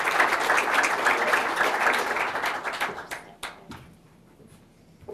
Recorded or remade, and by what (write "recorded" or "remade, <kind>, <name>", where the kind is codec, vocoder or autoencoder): recorded